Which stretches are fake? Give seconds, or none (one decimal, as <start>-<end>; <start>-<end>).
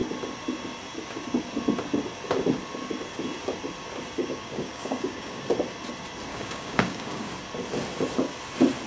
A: 4.2-5.4; 6.3-7.3